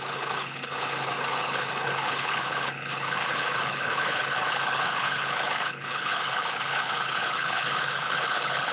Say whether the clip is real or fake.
fake